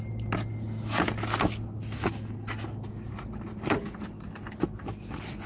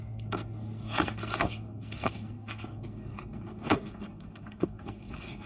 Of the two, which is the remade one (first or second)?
second